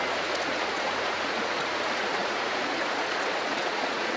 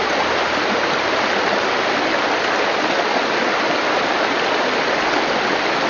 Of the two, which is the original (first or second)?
second